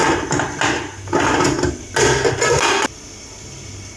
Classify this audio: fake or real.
real